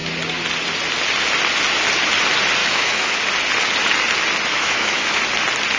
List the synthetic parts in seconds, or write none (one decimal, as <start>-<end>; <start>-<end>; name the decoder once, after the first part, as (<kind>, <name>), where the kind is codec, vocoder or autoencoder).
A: 2.6-3.2 (autoencoder, DAC-VAE); 4.5-5.2